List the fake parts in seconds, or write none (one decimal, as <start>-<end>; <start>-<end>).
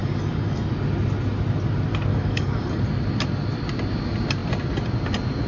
0.0-0.7; 2.1-2.8